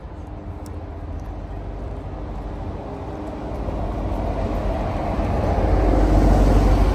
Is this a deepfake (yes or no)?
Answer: no